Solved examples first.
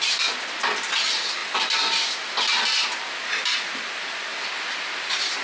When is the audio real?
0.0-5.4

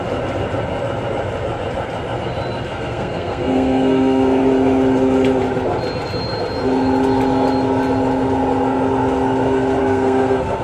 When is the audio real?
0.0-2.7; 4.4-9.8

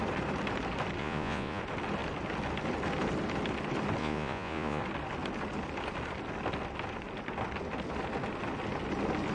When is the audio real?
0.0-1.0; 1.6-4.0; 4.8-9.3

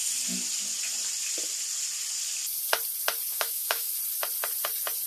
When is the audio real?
0.0-3.3; 3.9-5.1

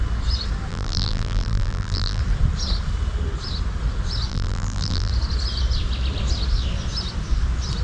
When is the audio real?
0.0-0.7; 2.2-4.3; 5.1-7.8

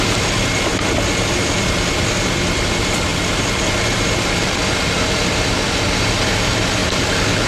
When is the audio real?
0.0-7.5

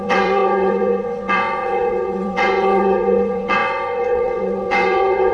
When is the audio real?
none